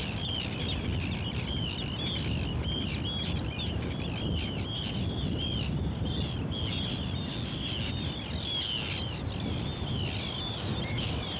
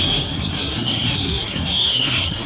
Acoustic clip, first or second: first